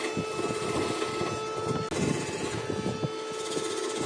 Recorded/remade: recorded